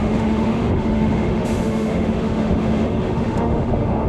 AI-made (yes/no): yes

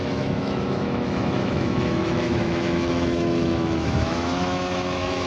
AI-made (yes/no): yes